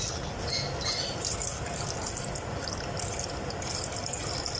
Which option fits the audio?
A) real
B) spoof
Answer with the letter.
A